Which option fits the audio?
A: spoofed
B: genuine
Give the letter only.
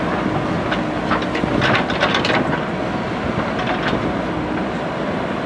B